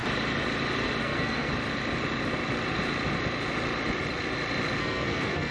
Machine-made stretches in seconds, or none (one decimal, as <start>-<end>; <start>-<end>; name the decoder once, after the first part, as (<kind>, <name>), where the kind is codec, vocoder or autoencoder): 1.0-1.5 (codec, SNAC); 4.8-5.5